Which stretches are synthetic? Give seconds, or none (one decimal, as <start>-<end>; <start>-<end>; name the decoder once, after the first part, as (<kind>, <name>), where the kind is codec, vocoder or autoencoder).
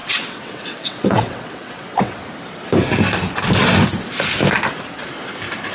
0.0-2.2 (vocoder, WaveNeXt)